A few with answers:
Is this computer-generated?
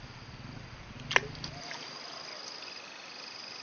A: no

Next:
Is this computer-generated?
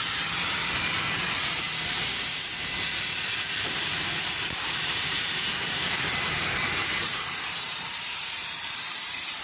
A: yes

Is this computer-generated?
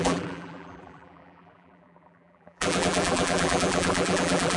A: yes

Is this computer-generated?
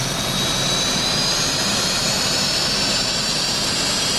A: yes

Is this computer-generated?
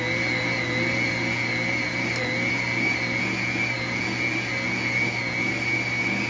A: no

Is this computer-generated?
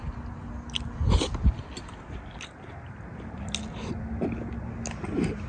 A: no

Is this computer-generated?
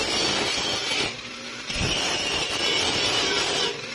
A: yes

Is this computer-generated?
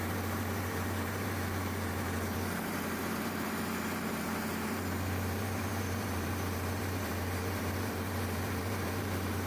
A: yes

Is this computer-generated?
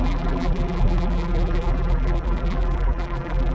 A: yes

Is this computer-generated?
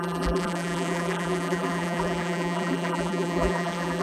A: yes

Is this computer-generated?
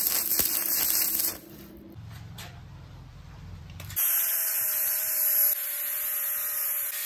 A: yes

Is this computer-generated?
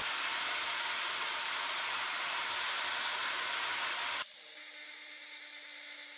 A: no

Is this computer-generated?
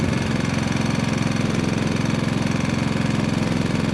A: no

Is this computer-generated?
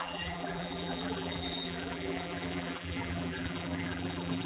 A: yes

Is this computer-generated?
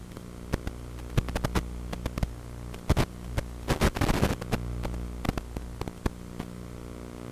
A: no